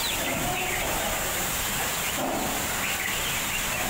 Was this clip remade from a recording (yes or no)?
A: no